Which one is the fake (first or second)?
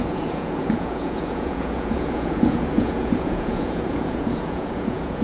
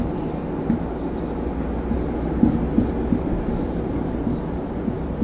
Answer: first